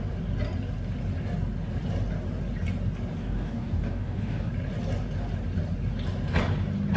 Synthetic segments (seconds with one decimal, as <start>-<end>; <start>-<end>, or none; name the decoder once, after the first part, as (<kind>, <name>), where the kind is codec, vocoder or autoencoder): 3.2-4.5 (codec, DAC)